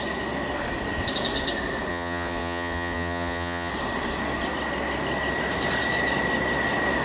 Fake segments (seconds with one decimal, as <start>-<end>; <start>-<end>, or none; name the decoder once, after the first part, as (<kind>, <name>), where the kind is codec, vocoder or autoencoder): 1.9-3.7 (vocoder, Vocos)